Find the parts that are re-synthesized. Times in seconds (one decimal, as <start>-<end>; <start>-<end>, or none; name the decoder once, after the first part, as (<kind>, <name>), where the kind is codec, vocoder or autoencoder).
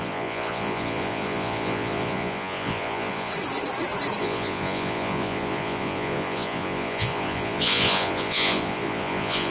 0.0-3.3 (vocoder, Vocos); 4.2-9.5